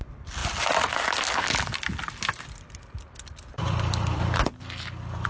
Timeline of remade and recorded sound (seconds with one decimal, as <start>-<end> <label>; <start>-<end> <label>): 0.0-0.4 remade; 0.4-3.6 recorded; 3.6-5.3 remade

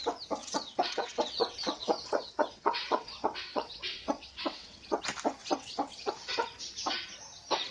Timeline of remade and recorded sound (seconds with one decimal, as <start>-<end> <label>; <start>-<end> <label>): 0.0-0.4 recorded; 0.4-5.0 remade; 5.0-5.4 recorded; 5.4-6.1 remade; 6.1-7.7 recorded